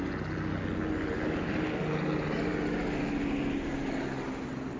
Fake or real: real